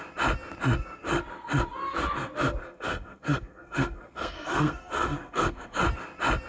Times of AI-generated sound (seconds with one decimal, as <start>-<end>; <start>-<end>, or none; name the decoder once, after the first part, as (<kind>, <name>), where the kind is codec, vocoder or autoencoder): 2.6-5.8 (codec, SNAC)